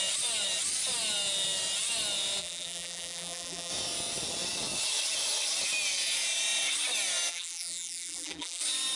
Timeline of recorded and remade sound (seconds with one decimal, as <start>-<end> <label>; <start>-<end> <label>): 0.0-2.4 recorded; 2.4-3.7 remade; 3.7-7.3 recorded; 7.3-8.6 remade; 8.6-9.0 recorded